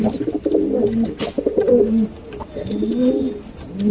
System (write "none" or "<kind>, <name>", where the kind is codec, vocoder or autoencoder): none